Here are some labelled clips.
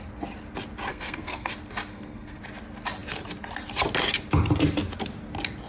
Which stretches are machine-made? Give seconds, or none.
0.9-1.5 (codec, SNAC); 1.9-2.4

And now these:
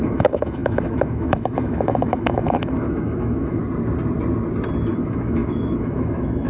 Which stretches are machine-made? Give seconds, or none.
0.0-3.6 (autoencoder, DAC-VAE); 4.9-6.5

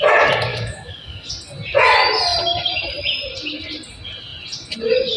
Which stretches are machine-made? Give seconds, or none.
0.5-1.3 (codec, DAC)

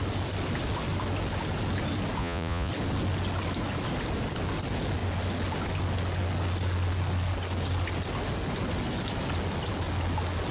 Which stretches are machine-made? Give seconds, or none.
2.2-2.7 (vocoder, Vocos)

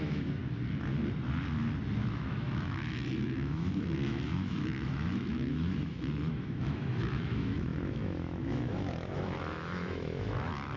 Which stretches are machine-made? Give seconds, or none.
0.0-0.4 (autoencoder, DAC-VAE); 2.0-10.8

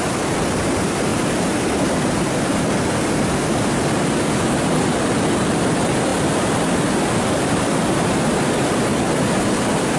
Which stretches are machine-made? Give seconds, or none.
0.0-1.1 (vocoder, BigVGAN v2); 4.8-6.1; 7.5-10.0